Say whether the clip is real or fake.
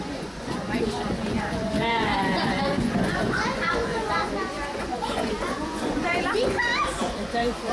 fake